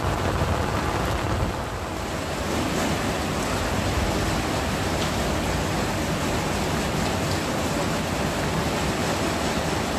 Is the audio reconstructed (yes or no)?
no